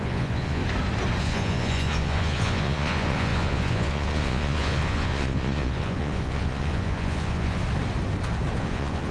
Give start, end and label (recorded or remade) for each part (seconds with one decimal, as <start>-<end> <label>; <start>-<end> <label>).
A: 0.0-0.6 remade; 0.6-1.2 recorded; 1.2-7.6 remade; 7.6-8.6 recorded; 8.6-9.1 remade